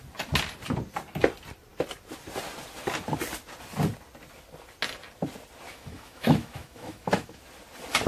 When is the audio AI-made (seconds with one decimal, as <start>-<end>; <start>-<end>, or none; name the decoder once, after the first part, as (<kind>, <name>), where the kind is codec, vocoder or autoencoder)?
5.7-7.4 (autoencoder, DAC-VAE)

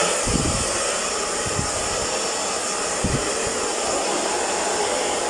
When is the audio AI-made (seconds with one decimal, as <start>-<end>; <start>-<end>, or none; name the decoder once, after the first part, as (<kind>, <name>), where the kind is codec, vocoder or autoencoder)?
none

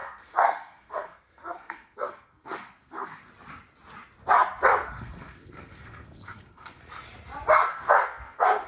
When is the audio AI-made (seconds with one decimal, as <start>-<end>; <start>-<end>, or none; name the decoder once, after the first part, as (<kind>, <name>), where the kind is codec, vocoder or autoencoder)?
0.0-3.3 (codec, SNAC); 4.8-6.8; 7.7-8.7

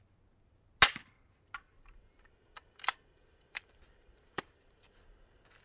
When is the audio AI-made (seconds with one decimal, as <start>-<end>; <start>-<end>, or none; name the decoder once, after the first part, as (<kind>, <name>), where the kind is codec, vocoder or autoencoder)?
1.6-5.0 (vocoder, BigVGAN v2)